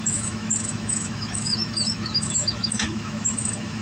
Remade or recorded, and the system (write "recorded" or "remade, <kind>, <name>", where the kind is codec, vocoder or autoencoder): remade, autoencoder, DAC-VAE